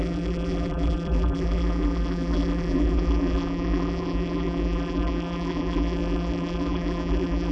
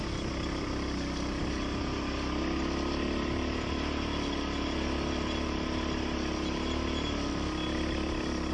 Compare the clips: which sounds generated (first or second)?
first